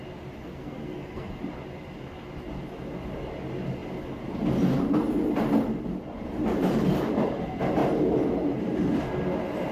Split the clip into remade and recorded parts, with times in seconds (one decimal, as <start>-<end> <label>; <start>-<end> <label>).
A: 0.0-0.4 recorded; 0.4-1.4 remade; 1.4-9.7 recorded